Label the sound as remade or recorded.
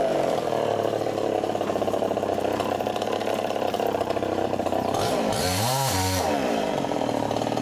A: remade